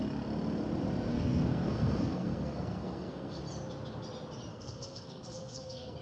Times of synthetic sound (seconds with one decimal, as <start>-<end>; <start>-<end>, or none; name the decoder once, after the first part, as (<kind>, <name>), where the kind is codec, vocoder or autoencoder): 1.1-3.4 (codec, SNAC); 4.5-6.0